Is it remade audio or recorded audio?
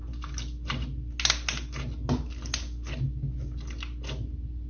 recorded